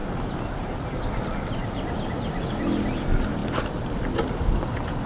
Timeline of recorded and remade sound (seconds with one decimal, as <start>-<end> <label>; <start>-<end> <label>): 0.0-5.1 recorded